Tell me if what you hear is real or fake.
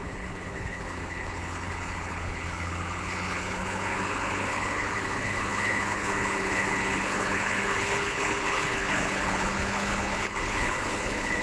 fake